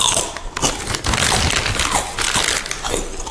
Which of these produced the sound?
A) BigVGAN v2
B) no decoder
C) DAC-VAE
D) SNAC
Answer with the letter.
B